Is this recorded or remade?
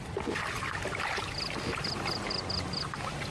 remade